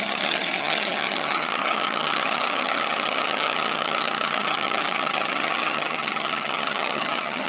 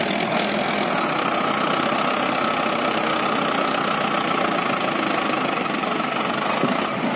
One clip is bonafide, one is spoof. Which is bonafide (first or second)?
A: second